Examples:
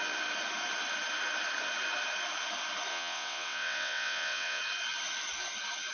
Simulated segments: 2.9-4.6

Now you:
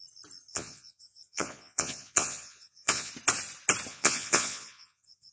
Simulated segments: 0.5-3.1; 3.9-5.3

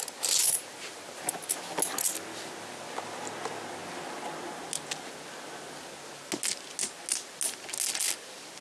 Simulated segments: none